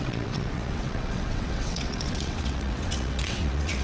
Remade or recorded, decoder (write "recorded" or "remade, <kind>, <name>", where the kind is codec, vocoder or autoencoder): remade, vocoder, WaveNeXt